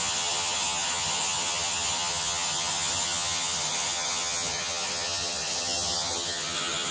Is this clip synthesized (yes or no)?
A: yes